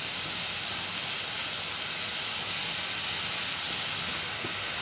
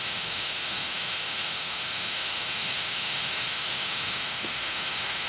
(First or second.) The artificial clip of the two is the second